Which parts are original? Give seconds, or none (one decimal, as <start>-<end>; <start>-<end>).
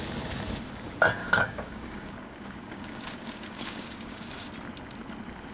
0.0-1.2; 4.5-5.5